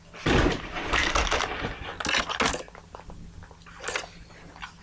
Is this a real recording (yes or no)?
yes